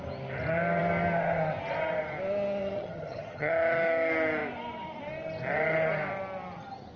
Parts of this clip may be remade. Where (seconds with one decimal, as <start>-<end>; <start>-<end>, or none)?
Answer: 2.6-3.5